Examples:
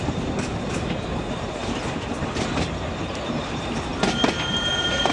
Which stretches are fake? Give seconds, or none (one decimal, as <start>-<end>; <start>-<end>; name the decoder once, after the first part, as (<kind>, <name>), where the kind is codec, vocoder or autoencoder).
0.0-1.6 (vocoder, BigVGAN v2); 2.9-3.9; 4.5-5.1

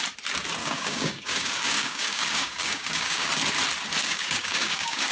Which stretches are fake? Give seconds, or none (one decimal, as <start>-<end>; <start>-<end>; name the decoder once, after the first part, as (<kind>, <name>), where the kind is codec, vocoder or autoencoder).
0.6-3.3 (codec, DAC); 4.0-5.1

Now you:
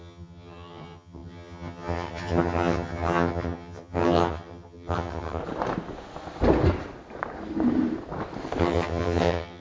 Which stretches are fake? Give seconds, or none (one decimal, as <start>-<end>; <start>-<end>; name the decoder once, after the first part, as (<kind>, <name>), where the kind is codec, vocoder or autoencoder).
0.0-5.4 (vocoder, HiFi-GAN); 8.6-9.6

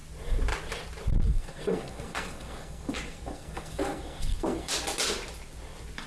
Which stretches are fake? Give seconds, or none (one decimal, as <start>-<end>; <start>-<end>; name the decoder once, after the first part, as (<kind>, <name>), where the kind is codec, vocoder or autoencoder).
1.2-4.7 (codec, SNAC)

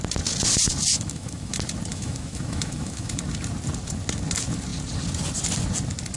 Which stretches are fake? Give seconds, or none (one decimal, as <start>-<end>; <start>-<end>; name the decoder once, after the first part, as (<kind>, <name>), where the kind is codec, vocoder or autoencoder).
0.9-1.5 (autoencoder, DAC-VAE); 1.9-3.2

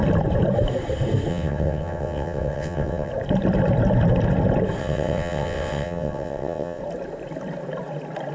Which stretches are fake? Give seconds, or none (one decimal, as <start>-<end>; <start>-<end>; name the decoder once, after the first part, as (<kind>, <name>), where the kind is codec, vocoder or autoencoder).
1.3-3.1 (vocoder, WaveNeXt); 4.8-6.8

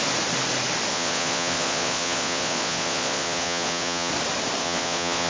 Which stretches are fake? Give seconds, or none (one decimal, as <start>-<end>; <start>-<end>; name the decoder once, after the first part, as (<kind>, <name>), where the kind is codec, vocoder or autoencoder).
0.9-4.1 (vocoder, Vocos); 4.6-5.3